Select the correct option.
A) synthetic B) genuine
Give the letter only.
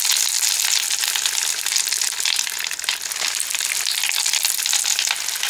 B